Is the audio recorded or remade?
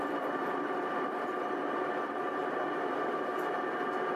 recorded